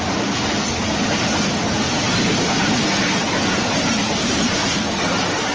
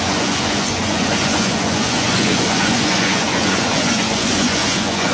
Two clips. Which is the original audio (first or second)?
first